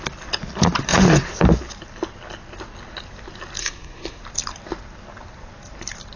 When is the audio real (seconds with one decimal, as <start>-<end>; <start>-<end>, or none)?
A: 0.0-3.6; 4.2-6.2